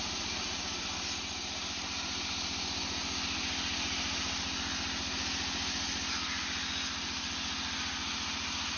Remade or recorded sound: recorded